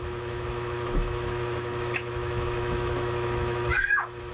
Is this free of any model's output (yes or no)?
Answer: no